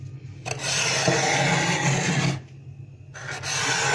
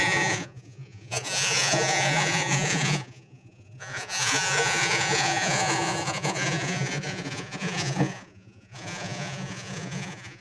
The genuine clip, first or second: first